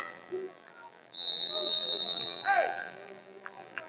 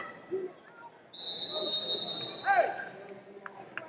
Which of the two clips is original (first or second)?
second